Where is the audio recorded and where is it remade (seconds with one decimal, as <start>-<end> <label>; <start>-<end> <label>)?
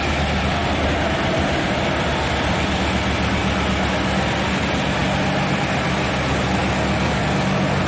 0.0-0.6 recorded; 0.6-2.7 remade; 2.7-7.9 recorded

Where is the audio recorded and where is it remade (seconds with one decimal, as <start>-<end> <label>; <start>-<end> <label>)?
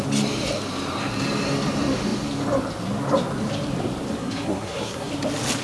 0.0-4.2 recorded; 4.2-5.1 remade; 5.1-5.6 recorded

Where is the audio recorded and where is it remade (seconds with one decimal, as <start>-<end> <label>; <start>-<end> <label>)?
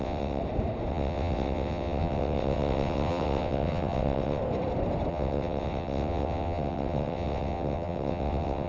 0.0-0.4 remade; 0.4-0.9 recorded; 0.9-4.4 remade; 4.4-5.1 recorded; 5.1-8.7 remade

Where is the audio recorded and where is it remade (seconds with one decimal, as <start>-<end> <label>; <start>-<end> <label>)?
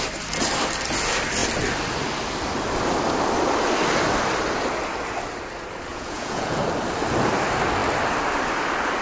0.0-5.9 recorded; 5.9-6.6 remade; 6.6-9.0 recorded